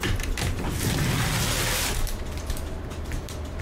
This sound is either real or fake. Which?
real